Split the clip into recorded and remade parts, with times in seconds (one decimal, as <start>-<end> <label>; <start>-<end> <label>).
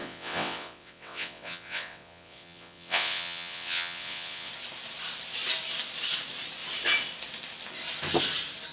0.0-4.5 remade; 4.5-8.7 recorded